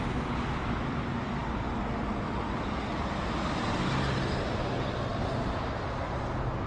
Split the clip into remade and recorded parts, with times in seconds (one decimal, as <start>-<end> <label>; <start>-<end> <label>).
0.0-5.1 recorded; 5.1-5.8 remade; 5.8-6.7 recorded